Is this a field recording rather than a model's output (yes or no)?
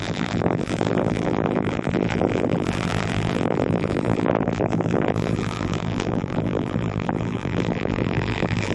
no